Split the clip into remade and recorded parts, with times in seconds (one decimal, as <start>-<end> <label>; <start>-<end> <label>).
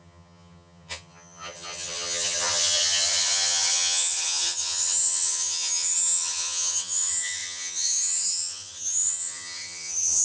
0.0-10.2 remade